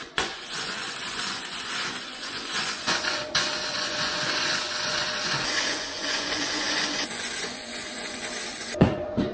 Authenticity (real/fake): fake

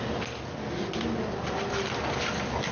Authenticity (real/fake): real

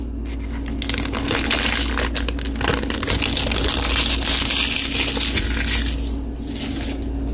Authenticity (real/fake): real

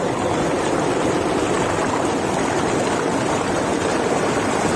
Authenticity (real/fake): real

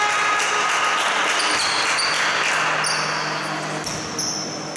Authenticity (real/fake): real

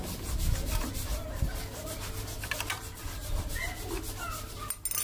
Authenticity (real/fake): real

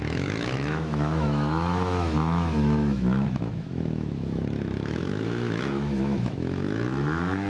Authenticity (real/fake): fake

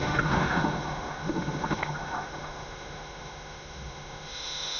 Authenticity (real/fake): fake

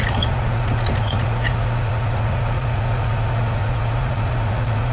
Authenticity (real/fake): fake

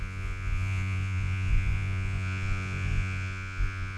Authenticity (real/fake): fake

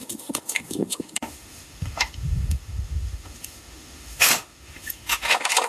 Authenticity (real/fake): fake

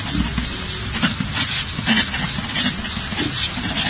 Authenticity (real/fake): real